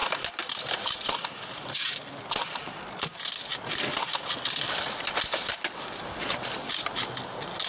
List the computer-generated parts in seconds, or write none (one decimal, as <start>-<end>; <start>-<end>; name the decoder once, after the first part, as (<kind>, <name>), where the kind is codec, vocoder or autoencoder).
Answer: 0.0-2.6 (vocoder, BigVGAN v2)